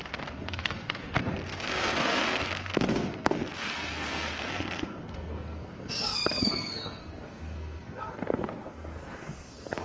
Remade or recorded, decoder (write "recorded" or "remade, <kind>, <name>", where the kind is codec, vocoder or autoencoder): remade, codec, SNAC